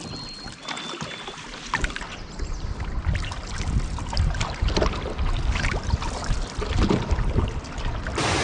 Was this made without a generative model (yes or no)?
yes